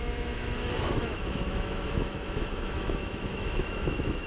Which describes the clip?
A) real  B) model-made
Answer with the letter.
B